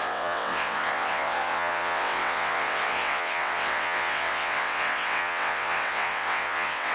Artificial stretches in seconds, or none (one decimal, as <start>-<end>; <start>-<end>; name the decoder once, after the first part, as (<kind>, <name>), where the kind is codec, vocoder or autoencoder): 0.0-6.9 (vocoder, WaveNeXt)